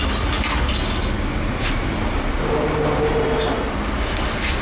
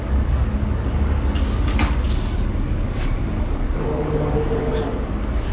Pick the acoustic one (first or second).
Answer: first